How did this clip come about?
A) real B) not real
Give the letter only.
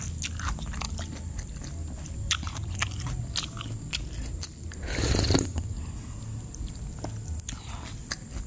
A